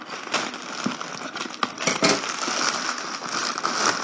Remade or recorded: recorded